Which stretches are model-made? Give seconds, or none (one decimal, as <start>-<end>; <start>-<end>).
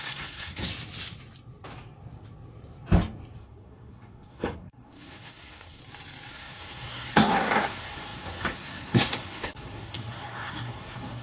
0.0-0.7; 3.4-5.8; 6.3-11.2